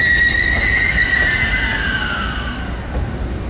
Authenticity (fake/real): real